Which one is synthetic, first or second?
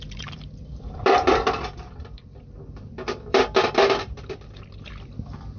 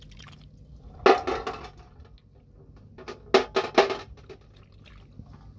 first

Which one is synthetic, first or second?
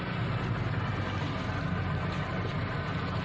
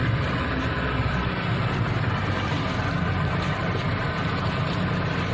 second